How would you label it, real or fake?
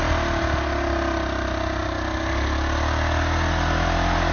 real